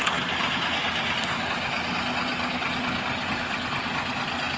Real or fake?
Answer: real